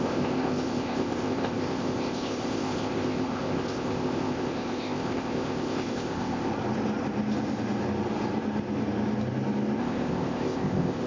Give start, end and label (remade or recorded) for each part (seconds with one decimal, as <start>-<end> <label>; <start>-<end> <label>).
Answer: 0.0-6.5 remade; 6.5-9.8 recorded; 9.8-11.1 remade